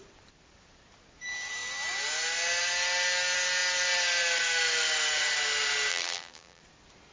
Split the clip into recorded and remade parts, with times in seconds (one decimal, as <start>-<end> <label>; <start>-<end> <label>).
0.0-5.9 recorded; 5.9-6.6 remade; 6.6-7.1 recorded